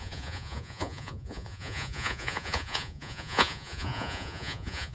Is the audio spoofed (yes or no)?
yes